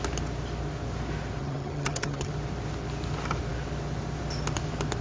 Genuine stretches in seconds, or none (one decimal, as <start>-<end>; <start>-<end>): 0.0-1.4; 2.3-5.0